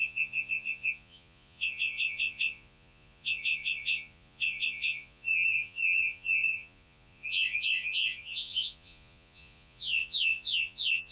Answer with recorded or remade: remade